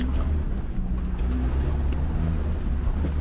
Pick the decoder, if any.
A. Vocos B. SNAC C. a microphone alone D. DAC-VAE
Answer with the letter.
C